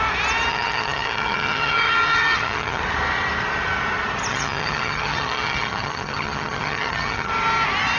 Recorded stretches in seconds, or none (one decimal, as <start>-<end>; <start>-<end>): 0.0-0.5; 2.8-4.3; 7.3-8.0